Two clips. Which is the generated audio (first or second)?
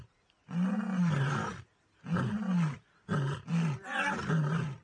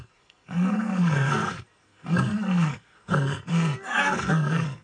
second